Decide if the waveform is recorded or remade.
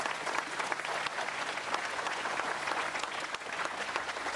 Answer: remade